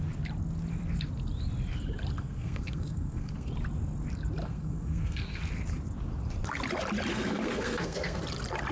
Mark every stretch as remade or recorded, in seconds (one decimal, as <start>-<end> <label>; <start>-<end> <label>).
0.0-2.2 recorded; 2.2-3.5 remade; 3.5-4.4 recorded; 4.4-5.4 remade; 5.4-7.1 recorded; 7.1-8.2 remade; 8.2-8.7 recorded